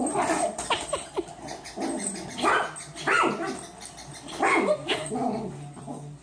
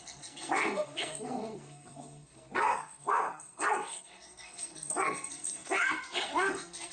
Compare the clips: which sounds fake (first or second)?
second